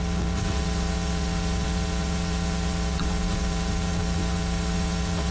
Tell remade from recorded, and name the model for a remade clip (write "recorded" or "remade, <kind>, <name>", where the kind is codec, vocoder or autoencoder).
remade, vocoder, WaveNeXt